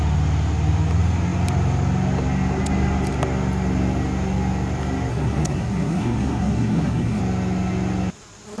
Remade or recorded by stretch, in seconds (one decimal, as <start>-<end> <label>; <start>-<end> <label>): 0.0-5.1 recorded; 5.1-7.2 remade; 7.2-8.6 recorded

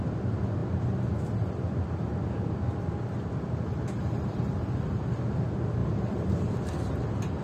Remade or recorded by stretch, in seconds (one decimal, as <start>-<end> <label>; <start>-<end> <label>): 0.0-0.6 recorded; 0.6-5.0 remade; 5.0-5.8 recorded; 5.8-6.6 remade; 6.6-7.4 recorded

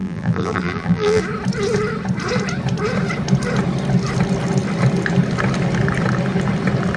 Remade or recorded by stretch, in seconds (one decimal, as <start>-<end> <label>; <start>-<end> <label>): 0.0-1.2 remade; 1.2-7.0 recorded

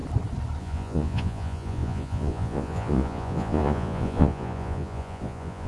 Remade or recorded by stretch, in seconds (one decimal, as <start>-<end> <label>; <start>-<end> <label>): 0.0-0.6 recorded; 0.6-5.7 remade

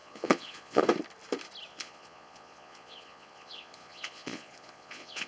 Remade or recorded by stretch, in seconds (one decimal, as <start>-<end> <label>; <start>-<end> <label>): 0.0-0.8 remade; 0.8-1.7 recorded; 1.7-5.3 remade

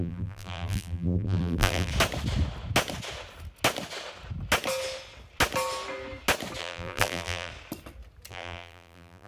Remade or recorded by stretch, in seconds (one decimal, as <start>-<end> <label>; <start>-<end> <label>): 0.0-1.9 remade; 1.9-6.6 recorded; 6.6-7.5 remade; 7.5-8.3 recorded; 8.3-9.3 remade

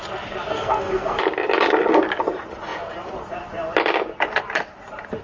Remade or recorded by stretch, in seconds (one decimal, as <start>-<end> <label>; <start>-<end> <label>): 0.0-0.5 recorded; 0.5-1.2 remade; 1.2-5.2 recorded